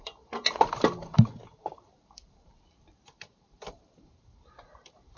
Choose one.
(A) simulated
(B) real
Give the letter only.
A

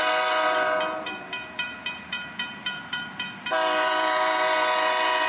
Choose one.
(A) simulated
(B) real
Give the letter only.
A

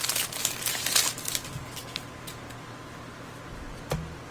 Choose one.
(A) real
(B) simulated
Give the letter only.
A